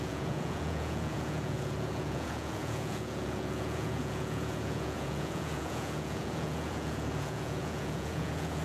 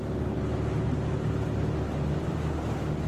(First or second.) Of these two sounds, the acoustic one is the second